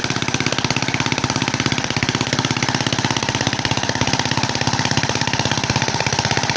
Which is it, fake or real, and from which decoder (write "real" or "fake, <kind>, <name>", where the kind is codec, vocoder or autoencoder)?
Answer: fake, vocoder, BigVGAN v2